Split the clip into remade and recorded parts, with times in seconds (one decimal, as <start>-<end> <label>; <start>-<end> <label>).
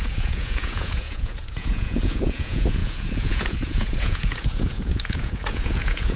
0.0-6.2 remade